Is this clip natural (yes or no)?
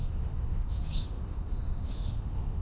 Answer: no